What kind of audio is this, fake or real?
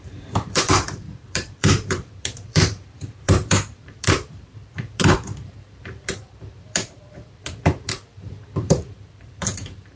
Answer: fake